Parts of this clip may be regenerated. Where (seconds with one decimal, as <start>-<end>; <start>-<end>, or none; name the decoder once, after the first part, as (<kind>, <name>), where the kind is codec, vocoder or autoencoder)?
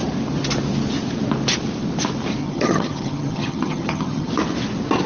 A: 2.4-4.3 (vocoder, HiFi-GAN)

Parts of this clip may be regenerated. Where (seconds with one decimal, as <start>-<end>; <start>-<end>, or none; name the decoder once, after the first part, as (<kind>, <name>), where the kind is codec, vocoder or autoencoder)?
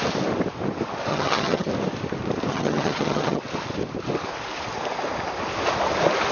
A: 1.1-1.7 (vocoder, HiFi-GAN); 2.5-3.4